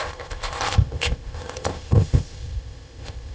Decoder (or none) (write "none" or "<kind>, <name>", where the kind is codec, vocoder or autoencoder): codec, ZipCodec